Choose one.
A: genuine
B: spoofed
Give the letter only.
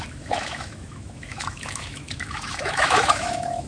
B